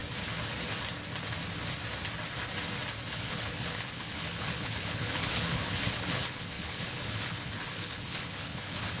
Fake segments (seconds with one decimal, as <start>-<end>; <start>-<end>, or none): 3.1-9.0